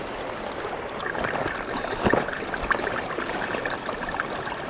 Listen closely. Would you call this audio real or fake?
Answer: real